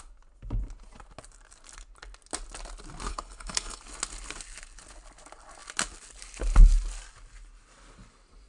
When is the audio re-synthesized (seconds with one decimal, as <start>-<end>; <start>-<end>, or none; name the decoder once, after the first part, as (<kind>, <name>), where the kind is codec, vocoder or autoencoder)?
3.1-3.8 (codec, HILCodec)